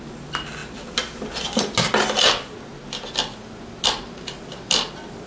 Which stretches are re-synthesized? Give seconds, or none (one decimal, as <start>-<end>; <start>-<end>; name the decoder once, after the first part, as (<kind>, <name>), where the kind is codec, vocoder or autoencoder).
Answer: none